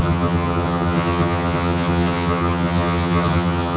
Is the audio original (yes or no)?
no